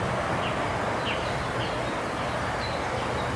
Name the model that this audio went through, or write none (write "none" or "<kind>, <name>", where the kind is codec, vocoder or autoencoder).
none